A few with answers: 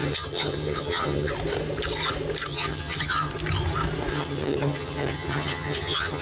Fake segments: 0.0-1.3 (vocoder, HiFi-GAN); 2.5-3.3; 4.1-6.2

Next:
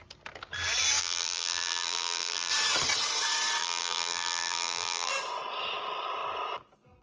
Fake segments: 1.0-2.5 (vocoder, BigVGAN v2); 3.6-5.1

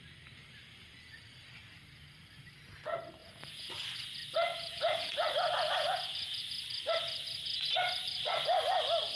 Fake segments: 3.2-3.7 (vocoder, Vocos); 4.5-6.4

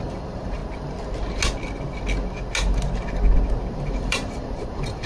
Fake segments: 0.0-0.6 (vocoder, BigVGAN v2); 3.7-5.1

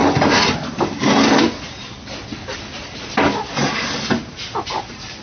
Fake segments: 4.2-5.2 (vocoder, BigVGAN v2)